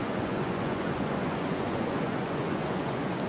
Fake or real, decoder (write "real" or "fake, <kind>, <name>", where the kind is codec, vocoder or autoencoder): fake, vocoder, Vocos